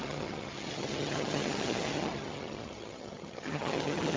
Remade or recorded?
remade